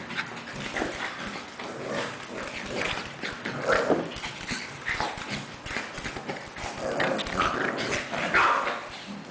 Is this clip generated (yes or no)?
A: no